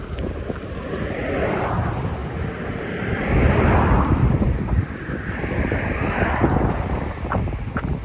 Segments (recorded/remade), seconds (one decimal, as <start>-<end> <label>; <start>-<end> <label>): 0.0-2.2 recorded; 2.2-6.2 remade; 6.2-8.0 recorded